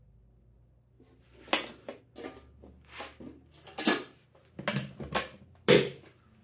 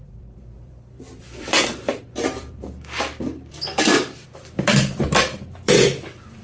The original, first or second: first